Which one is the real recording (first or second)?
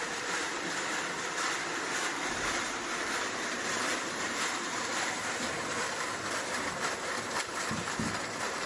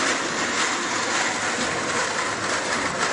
second